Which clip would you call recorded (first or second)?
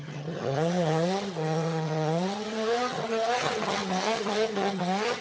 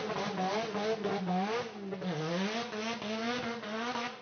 second